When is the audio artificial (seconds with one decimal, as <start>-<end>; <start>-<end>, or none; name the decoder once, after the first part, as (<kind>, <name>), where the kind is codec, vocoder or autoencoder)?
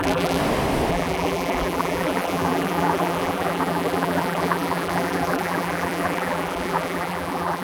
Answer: 0.0-0.4 (vocoder, BigVGAN v2); 0.9-7.6